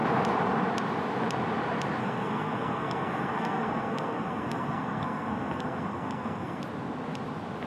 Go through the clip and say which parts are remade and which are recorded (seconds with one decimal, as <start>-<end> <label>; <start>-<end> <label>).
0.0-2.0 recorded; 2.0-6.6 remade; 6.6-7.7 recorded